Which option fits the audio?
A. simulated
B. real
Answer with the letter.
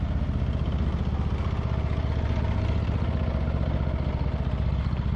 B